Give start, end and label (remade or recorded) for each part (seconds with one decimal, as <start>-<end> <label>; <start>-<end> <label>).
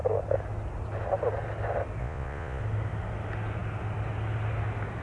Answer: 0.0-2.0 recorded; 2.0-2.6 remade; 2.6-5.0 recorded